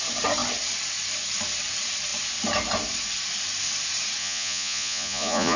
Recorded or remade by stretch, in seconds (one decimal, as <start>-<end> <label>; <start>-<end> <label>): 0.0-4.2 recorded; 4.2-5.6 remade